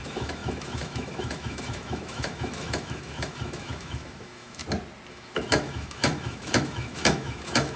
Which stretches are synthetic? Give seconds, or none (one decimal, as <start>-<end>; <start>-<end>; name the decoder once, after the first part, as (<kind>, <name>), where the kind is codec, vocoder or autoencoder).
0.0-4.6 (autoencoder, DAC-VAE); 5.1-7.8